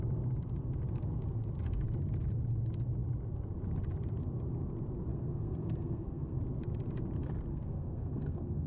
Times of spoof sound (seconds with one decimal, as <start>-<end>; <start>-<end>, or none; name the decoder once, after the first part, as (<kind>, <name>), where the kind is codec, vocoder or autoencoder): 5.1-6.4 (codec, SNAC); 7.5-8.7